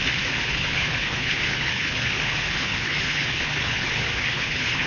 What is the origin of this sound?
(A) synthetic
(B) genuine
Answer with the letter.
A